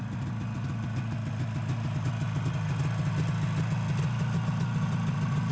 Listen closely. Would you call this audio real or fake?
real